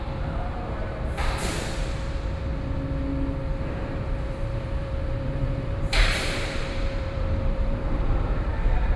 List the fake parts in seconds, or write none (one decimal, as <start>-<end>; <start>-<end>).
0.0-2.4; 3.4-9.0